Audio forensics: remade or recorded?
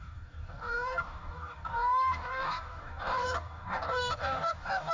remade